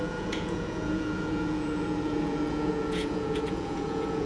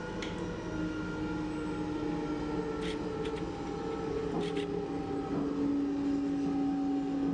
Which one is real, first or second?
second